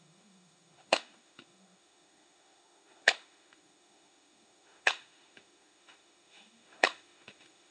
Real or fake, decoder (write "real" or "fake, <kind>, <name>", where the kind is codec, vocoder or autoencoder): fake, autoencoder, DAC-VAE